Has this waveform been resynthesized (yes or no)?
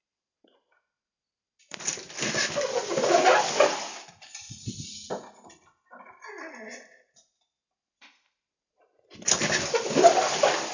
no